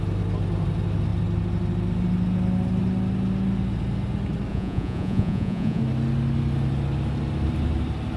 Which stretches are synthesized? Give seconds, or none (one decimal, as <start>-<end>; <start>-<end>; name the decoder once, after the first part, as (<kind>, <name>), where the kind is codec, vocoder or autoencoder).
4.5-5.8 (vocoder, Vocos)